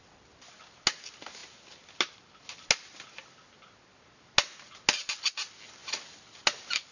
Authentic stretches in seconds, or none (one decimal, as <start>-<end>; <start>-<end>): 0.0-6.9